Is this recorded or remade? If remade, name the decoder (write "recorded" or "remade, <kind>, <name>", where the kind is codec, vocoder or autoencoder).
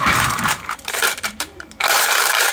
remade, vocoder, BigVGAN v2